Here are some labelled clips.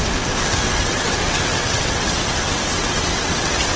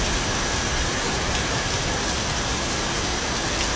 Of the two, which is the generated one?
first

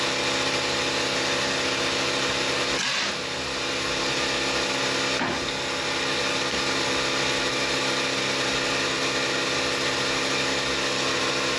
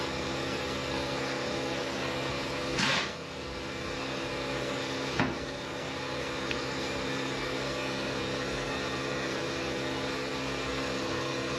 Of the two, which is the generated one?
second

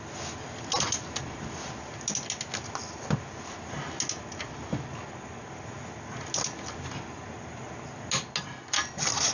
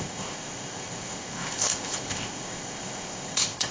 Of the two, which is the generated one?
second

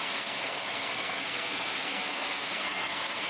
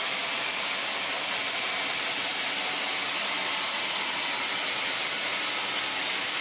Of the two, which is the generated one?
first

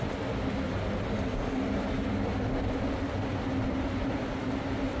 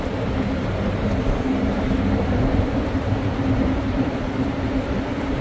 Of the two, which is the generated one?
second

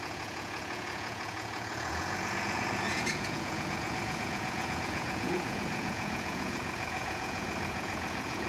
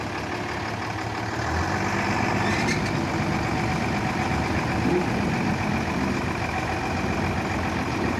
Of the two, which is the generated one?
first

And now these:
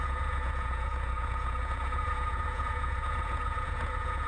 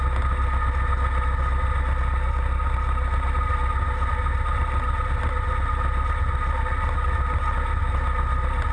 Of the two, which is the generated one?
first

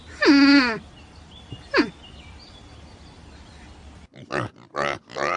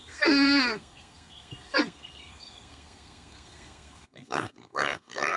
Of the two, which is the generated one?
second